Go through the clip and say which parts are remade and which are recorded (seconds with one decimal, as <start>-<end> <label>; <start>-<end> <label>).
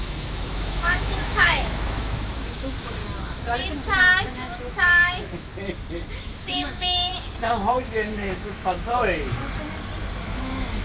0.0-3.0 remade; 3.0-4.2 recorded; 4.2-5.5 remade; 5.5-6.1 recorded; 6.1-7.1 remade; 7.1-7.7 recorded; 7.7-9.4 remade; 9.4-10.2 recorded; 10.2-10.8 remade